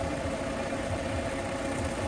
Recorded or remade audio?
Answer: recorded